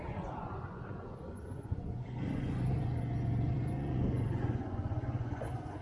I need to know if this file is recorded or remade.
remade